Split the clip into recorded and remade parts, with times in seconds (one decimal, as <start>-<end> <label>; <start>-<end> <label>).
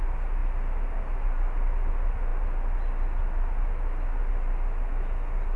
0.0-5.6 recorded